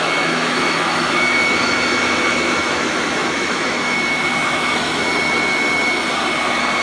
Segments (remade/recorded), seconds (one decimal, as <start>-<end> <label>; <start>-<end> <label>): 0.0-5.1 remade; 5.1-6.8 recorded